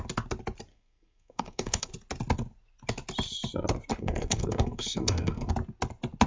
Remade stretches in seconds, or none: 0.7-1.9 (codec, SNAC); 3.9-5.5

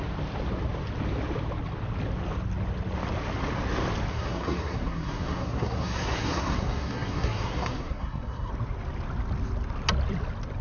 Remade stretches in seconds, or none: 4.1-8.5 (codec, SNAC)

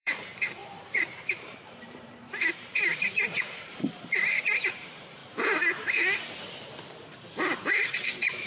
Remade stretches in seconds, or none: 0.0-5.2 (vocoder, BigVGAN v2); 7.6-8.5

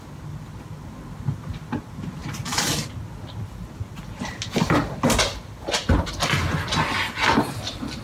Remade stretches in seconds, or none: none

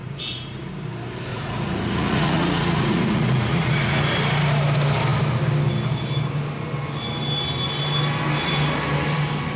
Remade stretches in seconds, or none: 0.0-0.7 (vocoder, Vocos); 1.3-4.0

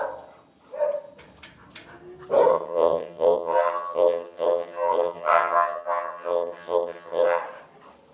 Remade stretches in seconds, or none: 2.5-7.4 (vocoder, HiFi-GAN)

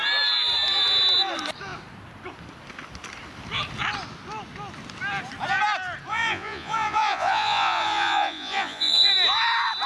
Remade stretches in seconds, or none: 6.1-9.1 (vocoder, Vocos)

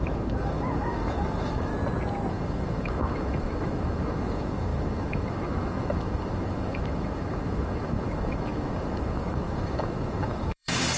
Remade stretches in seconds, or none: 0.0-1.7 (autoencoder, DAC-VAE); 2.3-11.0